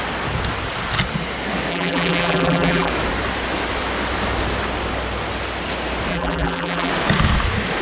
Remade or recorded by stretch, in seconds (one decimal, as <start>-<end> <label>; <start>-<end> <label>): 0.0-1.7 recorded; 1.7-2.9 remade; 2.9-6.1 recorded; 6.1-6.9 remade; 6.9-7.8 recorded